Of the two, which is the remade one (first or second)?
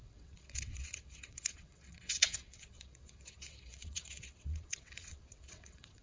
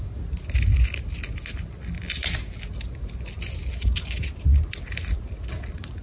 first